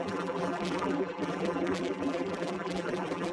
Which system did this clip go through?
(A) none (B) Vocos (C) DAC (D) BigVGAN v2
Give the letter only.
D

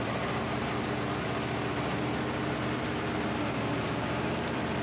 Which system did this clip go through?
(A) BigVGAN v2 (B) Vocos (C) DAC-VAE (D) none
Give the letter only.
D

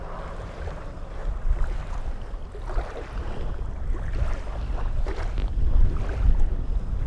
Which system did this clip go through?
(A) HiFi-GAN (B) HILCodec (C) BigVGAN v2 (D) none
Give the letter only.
D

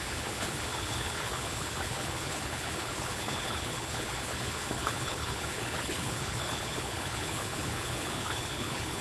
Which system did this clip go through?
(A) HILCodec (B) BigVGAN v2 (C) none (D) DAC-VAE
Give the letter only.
A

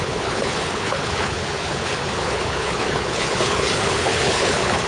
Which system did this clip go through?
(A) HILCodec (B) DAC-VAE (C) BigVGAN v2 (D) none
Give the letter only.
A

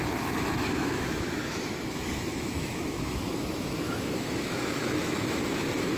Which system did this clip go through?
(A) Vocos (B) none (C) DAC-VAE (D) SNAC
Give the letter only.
C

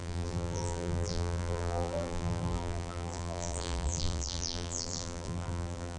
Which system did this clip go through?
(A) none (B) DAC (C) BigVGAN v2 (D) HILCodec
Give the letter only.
C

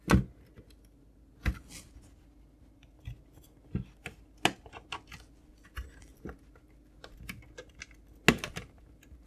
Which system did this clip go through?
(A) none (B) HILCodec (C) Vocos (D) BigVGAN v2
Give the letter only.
A